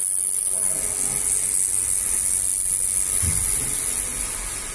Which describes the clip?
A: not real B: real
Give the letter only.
B